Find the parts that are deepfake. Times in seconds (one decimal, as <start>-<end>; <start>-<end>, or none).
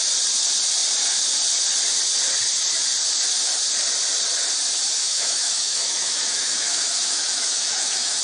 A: 5.0-8.2